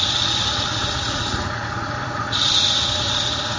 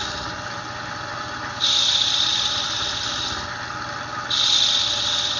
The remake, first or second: first